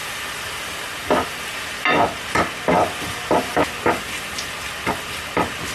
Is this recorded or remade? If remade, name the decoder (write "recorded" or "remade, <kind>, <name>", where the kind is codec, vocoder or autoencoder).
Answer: recorded